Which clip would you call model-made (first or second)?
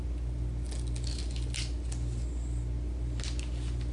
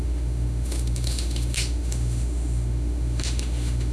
second